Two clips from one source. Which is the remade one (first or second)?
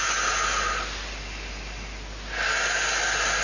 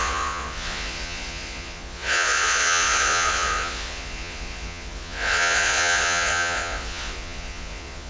second